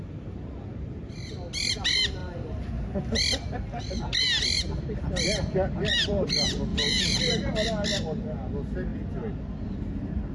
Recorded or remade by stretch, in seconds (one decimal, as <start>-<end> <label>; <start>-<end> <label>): 0.0-6.7 recorded; 6.7-7.2 remade; 7.2-10.3 recorded